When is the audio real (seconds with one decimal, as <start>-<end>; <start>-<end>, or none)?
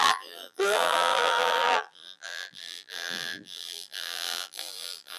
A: none